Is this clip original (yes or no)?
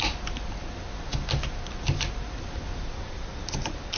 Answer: yes